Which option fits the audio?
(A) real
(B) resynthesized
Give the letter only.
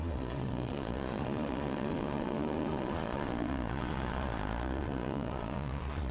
B